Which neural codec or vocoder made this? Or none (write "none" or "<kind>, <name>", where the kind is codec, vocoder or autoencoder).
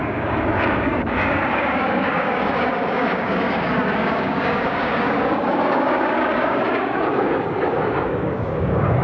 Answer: codec, DAC